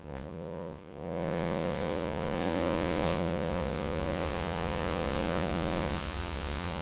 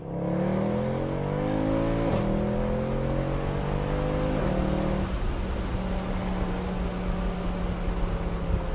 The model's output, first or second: first